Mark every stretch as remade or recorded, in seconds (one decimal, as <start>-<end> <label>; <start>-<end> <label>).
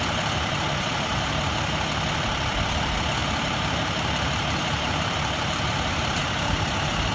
0.0-1.1 recorded; 1.1-1.9 remade; 1.9-3.2 recorded; 3.2-7.1 remade